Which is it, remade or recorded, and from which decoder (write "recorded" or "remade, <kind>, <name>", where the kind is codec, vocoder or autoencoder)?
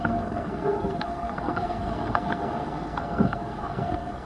remade, codec, SNAC